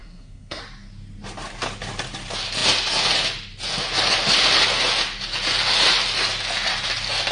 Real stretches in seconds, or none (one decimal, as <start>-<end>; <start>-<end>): 0.6-7.3